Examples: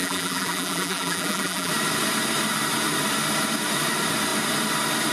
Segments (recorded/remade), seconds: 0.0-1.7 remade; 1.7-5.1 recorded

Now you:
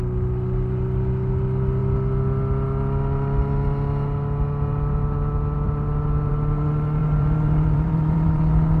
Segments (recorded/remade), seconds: 0.0-7.0 recorded; 7.0-8.4 remade; 8.4-8.8 recorded

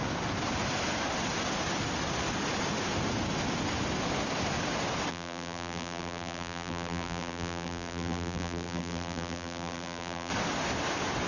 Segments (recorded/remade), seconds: 0.0-5.1 recorded; 5.1-10.3 remade; 10.3-11.3 recorded

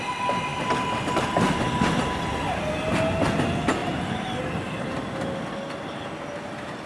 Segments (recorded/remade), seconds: 0.0-3.8 recorded; 3.8-4.4 remade; 4.4-6.9 recorded

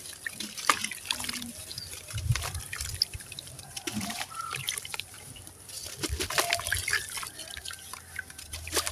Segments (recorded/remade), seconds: 0.0-2.9 recorded; 2.9-5.3 remade; 5.3-7.9 recorded; 7.9-8.9 remade